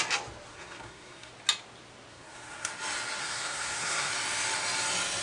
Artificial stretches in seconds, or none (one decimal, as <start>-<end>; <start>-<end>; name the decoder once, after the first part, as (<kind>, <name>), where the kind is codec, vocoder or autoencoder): 0.5-1.3 (codec, SNAC); 2.1-2.7; 3.2-4.1